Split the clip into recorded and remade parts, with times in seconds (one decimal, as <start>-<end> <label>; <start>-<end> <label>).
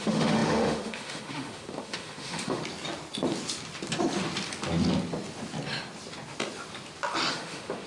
0.0-2.6 remade; 2.6-7.3 recorded; 7.3-7.9 remade